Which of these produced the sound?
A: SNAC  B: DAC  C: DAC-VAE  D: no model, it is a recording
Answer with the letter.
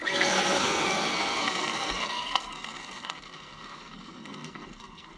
A